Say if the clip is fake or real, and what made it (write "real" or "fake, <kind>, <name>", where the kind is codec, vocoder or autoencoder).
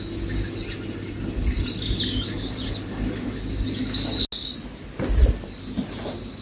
real